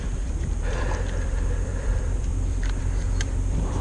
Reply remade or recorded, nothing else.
remade